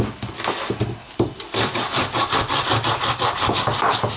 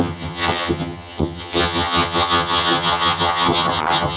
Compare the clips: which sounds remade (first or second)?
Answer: second